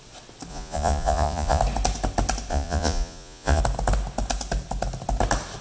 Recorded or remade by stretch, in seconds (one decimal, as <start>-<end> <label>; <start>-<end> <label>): 0.0-0.5 recorded; 0.5-1.6 remade; 1.6-2.5 recorded; 2.5-3.6 remade; 3.6-5.6 recorded